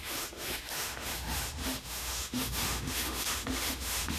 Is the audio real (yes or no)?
no